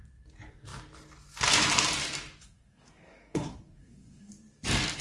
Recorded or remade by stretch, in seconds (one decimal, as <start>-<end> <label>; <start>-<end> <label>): 0.0-2.4 recorded; 2.4-4.3 remade; 4.3-5.0 recorded